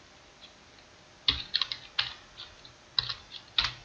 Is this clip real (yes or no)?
yes